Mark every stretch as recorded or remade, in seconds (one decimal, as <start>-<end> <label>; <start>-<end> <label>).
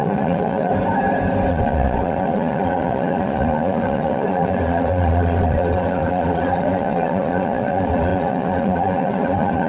0.0-0.7 remade; 0.7-1.5 recorded; 1.5-9.7 remade